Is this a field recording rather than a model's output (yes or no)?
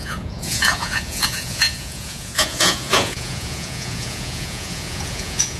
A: no